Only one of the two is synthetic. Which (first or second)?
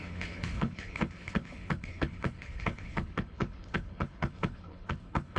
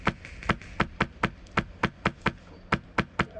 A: first